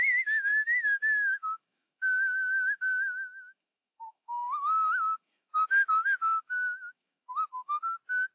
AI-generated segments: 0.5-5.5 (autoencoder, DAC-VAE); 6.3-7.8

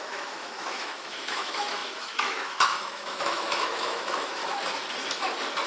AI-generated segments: 0.0-4.4 (autoencoder, DAC-VAE)